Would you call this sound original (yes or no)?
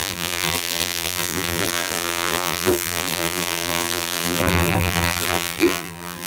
no